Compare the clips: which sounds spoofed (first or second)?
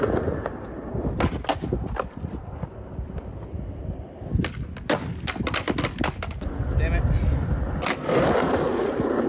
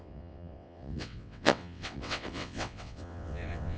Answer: second